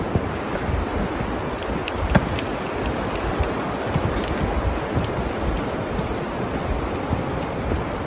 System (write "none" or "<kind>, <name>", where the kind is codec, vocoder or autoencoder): none